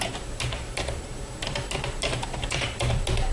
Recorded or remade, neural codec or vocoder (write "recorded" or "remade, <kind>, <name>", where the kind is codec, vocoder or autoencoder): remade, vocoder, BigVGAN v2